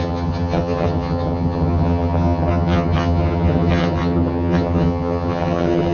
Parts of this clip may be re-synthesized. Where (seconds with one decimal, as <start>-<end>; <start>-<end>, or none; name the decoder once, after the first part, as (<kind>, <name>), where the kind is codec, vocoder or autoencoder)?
0.0-5.9 (vocoder, HiFi-GAN)